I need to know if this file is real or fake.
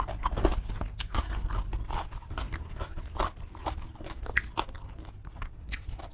real